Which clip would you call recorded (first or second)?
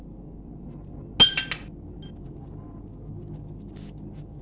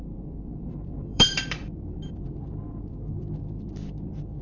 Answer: first